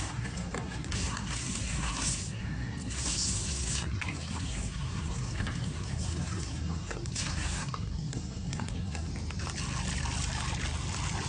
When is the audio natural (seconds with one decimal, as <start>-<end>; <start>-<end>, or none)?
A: 9.1-11.3

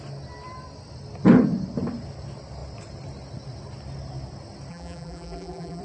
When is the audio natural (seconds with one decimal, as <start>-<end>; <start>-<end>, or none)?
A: 0.0-4.7